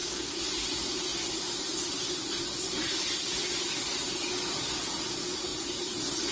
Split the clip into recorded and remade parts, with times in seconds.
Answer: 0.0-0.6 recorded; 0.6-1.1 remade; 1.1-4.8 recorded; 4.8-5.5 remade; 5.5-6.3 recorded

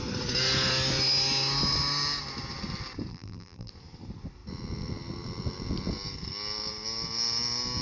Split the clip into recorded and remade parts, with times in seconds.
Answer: 0.0-3.1 recorded; 3.1-3.7 remade; 3.7-7.8 recorded

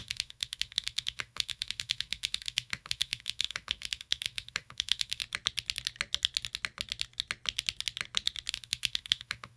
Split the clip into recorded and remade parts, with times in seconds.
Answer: 0.0-5.2 remade; 5.2-8.5 recorded; 8.5-9.6 remade

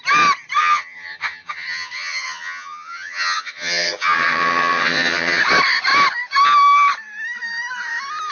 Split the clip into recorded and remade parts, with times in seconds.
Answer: 0.0-0.6 recorded; 0.6-5.4 remade; 5.4-8.3 recorded

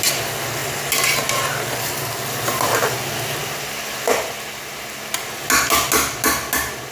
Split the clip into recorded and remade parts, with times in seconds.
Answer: 0.0-6.9 recorded

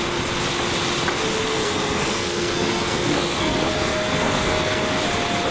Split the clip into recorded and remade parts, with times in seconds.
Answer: 0.0-1.5 recorded; 1.5-4.8 remade; 4.8-5.5 recorded